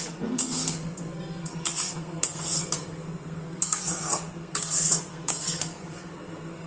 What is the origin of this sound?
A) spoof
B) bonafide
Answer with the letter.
A